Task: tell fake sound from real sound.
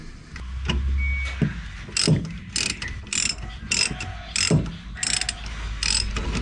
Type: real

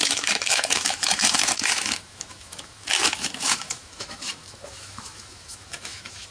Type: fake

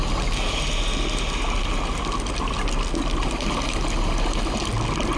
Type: real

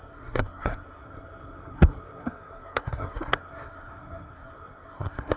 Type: fake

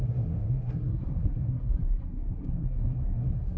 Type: fake